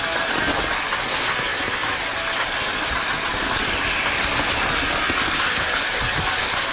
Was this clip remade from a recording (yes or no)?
no